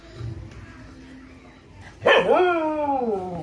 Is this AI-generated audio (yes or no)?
no